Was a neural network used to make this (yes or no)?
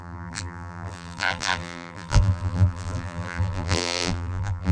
yes